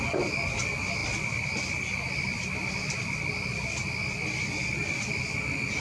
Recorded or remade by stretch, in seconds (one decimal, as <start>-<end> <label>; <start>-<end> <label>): 0.0-5.8 recorded